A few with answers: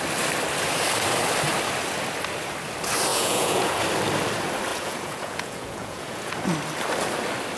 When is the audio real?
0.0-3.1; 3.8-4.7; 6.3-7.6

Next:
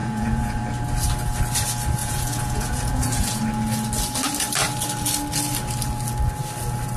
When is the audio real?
0.6-2.0; 3.4-7.0

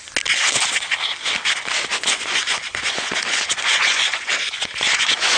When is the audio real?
0.0-1.9

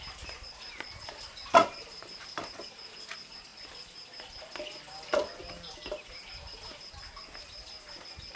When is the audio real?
0.0-8.4

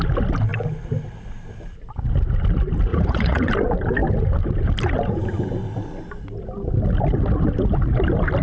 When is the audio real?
0.0-2.9; 3.5-8.4

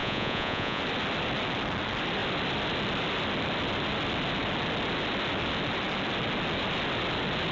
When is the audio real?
0.8-7.5

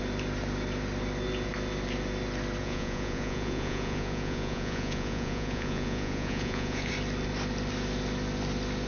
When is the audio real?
0.0-2.6; 6.9-8.9